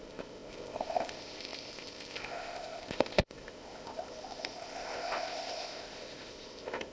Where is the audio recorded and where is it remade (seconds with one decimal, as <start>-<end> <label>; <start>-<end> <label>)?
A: 0.0-6.9 remade